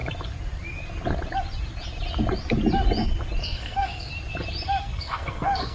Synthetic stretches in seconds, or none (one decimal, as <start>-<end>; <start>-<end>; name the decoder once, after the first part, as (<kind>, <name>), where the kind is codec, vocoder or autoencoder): 3.4-4.1 (codec, SNAC); 4.8-5.7